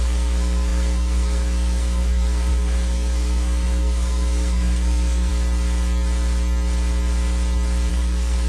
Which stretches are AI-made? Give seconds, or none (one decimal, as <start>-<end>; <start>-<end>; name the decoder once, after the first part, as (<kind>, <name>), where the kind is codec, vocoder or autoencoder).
0.0-5.3 (codec, SNAC); 7.9-8.5